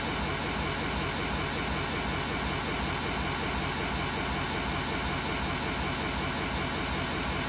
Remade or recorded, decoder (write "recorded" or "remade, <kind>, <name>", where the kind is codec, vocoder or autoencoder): recorded